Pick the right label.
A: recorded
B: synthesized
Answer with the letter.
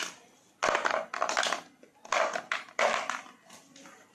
A